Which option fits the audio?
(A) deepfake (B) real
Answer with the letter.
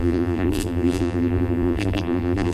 A